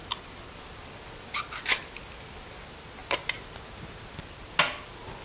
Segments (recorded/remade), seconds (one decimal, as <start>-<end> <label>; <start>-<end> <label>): 0.0-5.2 recorded